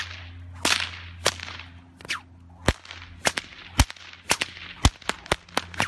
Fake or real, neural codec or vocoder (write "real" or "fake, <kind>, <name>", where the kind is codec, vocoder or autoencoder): real